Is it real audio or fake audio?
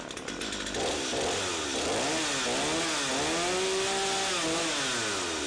real